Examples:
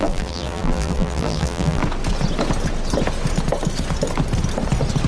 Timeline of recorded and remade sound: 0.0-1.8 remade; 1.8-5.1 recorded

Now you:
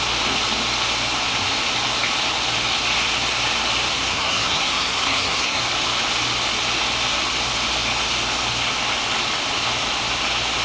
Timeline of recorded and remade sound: 0.0-3.9 recorded; 3.9-5.6 remade; 5.6-10.6 recorded